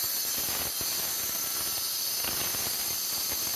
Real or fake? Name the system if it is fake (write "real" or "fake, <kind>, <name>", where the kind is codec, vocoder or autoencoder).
real